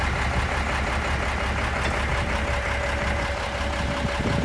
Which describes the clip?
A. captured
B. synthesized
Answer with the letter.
A